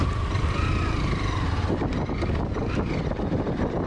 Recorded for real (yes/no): yes